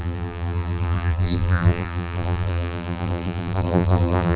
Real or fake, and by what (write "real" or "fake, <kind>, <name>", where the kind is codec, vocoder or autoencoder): fake, vocoder, BigVGAN v2